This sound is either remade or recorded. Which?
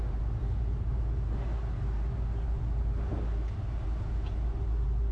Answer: recorded